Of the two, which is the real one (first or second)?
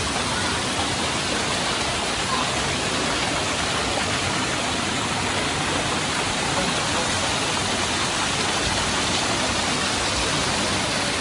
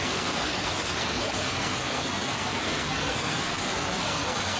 first